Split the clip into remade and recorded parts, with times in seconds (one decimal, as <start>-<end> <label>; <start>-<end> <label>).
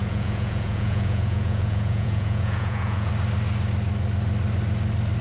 0.0-3.1 remade; 3.1-5.2 recorded